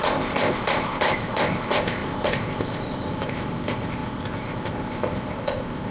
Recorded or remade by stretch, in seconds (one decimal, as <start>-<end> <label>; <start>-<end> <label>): 0.0-5.9 remade